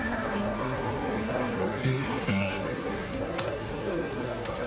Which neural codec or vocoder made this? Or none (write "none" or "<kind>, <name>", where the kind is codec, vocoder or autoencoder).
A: codec, SNAC